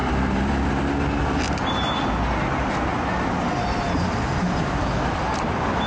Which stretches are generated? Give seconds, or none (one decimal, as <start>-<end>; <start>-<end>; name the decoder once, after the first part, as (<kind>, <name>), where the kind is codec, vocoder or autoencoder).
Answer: 0.0-0.7 (vocoder, BigVGAN v2)